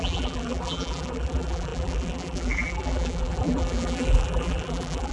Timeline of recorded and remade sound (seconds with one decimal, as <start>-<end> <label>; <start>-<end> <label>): 0.0-5.1 remade